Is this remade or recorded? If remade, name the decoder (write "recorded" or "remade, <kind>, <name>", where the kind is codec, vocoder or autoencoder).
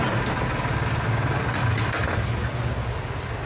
recorded